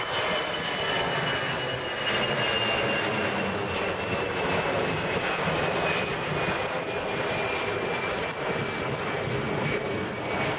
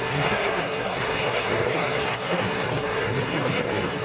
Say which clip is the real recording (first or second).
first